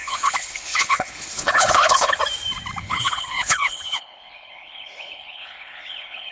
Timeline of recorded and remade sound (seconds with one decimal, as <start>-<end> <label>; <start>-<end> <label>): 0.0-2.2 remade; 2.2-2.8 recorded; 2.8-6.3 remade